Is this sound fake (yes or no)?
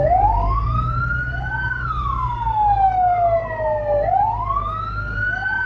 no